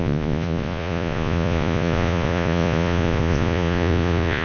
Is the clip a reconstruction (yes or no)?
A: yes